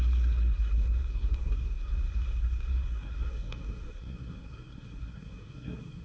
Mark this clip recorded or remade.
remade